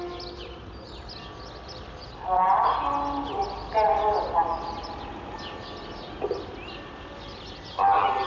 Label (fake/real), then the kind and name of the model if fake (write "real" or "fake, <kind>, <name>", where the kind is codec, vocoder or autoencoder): real